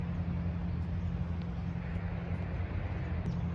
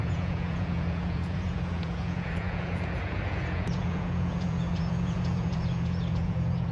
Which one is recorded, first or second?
first